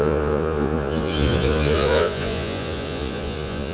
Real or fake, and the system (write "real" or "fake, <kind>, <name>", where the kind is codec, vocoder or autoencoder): fake, vocoder, Vocos